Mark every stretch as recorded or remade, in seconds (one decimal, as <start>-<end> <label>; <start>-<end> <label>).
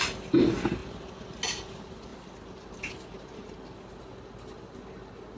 0.0-5.4 recorded